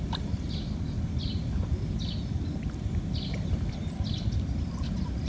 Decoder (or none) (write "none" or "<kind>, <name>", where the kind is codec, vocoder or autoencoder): none